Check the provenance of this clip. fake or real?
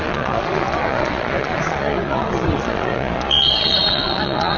fake